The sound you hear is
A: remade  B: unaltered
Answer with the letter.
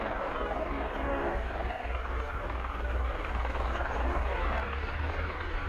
A